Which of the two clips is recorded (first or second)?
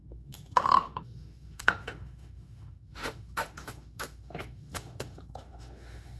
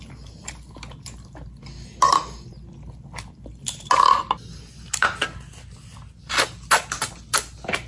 second